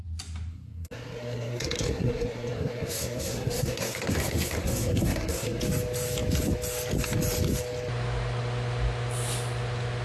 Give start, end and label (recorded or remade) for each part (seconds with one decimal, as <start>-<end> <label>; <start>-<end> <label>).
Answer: 0.0-0.5 recorded; 0.5-5.6 remade; 5.6-10.0 recorded